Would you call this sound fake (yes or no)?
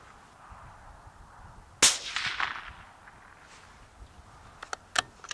no